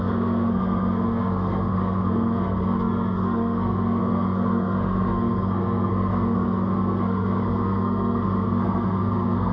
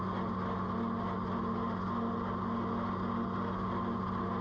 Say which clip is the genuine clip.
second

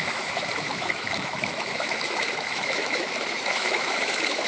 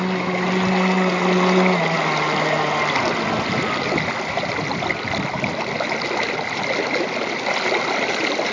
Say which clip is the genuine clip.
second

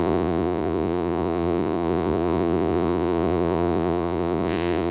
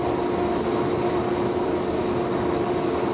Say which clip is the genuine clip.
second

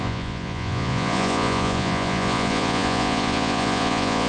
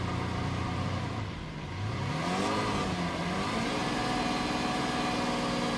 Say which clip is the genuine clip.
second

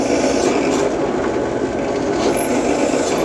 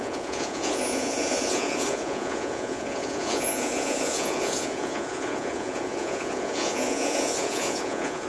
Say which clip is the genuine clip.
first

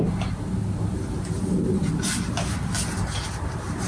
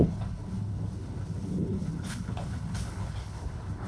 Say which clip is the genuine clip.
first